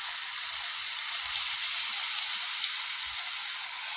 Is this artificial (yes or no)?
no